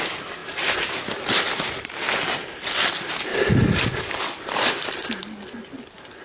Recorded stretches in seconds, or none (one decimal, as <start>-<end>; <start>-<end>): 0.0-3.3; 4.7-6.2